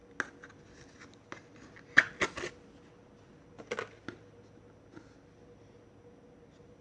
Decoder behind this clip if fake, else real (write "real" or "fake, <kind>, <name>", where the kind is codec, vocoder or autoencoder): real